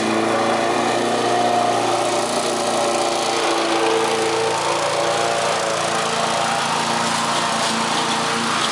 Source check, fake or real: real